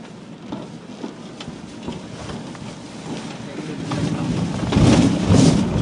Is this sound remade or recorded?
recorded